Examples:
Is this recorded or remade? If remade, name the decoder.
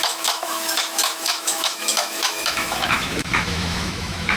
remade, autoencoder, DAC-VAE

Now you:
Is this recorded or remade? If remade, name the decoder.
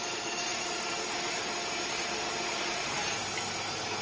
remade, vocoder, BigVGAN v2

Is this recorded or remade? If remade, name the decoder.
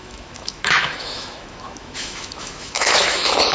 remade, autoencoder, DAC-VAE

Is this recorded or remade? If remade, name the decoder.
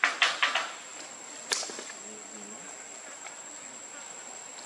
recorded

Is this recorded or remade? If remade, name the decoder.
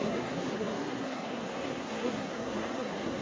remade, codec, SNAC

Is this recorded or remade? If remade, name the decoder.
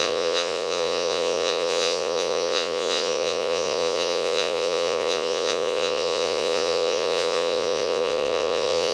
remade, vocoder, Vocos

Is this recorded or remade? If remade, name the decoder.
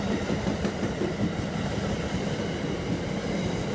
recorded